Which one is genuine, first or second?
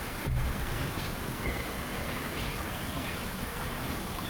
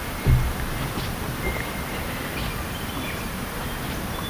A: second